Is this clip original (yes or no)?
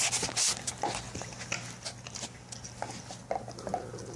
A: yes